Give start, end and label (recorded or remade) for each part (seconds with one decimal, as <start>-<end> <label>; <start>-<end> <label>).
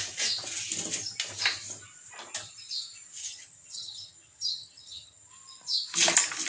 0.0-3.2 recorded; 3.2-5.3 remade; 5.3-6.5 recorded